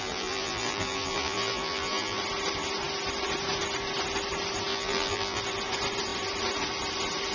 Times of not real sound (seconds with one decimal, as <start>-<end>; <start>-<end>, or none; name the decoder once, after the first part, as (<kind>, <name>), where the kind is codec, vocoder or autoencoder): 0.0-2.2 (vocoder, BigVGAN v2); 4.7-5.4